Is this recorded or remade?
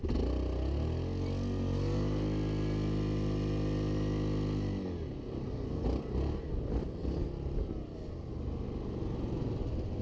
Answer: recorded